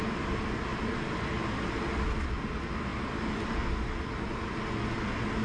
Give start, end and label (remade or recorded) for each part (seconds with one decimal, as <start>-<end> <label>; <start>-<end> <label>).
0.0-0.7 recorded; 0.7-1.7 remade; 1.7-5.4 recorded